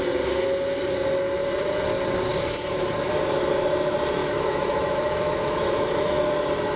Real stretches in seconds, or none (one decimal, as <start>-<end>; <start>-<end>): 0.0-2.3; 2.9-4.2; 6.3-6.8